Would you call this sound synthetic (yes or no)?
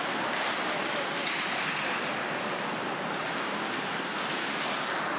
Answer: no